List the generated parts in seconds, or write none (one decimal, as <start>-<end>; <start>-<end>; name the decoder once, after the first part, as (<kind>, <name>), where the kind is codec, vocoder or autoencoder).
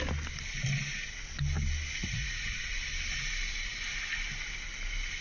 2.0-2.7 (vocoder, Vocos)